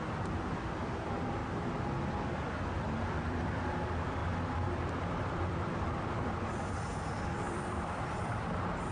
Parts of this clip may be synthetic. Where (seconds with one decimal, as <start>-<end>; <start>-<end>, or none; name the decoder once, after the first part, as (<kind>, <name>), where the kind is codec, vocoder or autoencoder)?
0.0-1.4 (vocoder, BigVGAN v2); 2.0-8.9